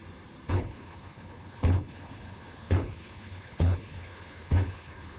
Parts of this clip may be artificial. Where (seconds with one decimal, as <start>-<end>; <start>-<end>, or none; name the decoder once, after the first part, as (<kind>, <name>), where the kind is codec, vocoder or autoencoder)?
0.5-5.2 (codec, HILCodec)